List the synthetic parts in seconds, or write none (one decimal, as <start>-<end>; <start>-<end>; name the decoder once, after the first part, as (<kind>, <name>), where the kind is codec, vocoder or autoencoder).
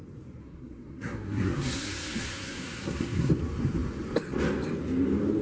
0.4-3.3 (codec, SNAC)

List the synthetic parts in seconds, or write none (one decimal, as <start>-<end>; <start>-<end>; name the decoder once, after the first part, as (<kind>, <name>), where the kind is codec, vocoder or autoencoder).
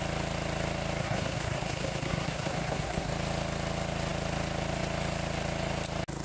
1.0-3.1 (codec, SNAC)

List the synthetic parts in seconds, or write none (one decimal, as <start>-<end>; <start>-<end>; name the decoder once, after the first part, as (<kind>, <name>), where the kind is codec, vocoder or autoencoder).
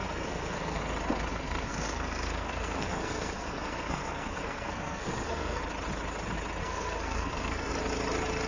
0.0-0.8 (codec, SNAC); 1.3-5.6; 6.6-7.7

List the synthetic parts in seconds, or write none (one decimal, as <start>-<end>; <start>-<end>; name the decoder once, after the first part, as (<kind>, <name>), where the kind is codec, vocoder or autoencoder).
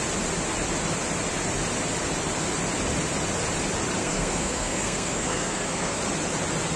4.0-6.0 (codec, SNAC)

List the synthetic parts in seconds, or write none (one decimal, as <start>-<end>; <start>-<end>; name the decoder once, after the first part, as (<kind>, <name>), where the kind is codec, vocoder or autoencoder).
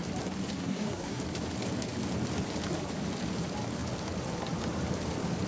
0.6-1.2 (codec, SNAC)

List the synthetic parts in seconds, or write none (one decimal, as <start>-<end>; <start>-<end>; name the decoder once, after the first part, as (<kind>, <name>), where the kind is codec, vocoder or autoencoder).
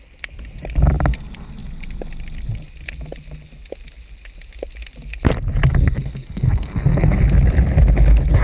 5.9-7.2 (codec, SNAC)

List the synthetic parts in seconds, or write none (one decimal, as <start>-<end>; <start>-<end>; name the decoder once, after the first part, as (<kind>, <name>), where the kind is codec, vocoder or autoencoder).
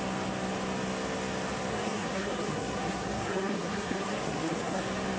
1.7-4.8 (codec, SNAC)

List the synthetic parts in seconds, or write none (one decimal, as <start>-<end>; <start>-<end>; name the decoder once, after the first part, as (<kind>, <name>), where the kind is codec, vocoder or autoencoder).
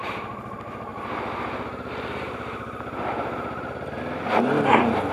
none